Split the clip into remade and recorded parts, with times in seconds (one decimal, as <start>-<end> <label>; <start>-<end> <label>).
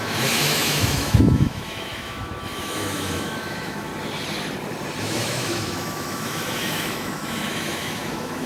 0.0-3.9 remade; 3.9-5.0 recorded; 5.0-8.5 remade